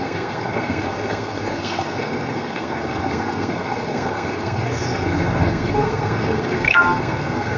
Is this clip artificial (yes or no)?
yes